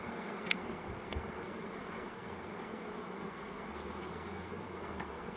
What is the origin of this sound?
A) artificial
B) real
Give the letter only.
A